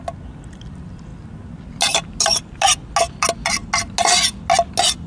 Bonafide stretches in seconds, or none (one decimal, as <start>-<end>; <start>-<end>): 0.0-5.1